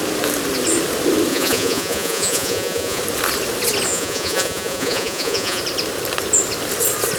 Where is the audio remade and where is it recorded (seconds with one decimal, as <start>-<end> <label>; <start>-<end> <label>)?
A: 0.0-1.3 recorded; 1.3-3.0 remade; 3.0-3.9 recorded; 3.9-5.6 remade; 5.6-7.2 recorded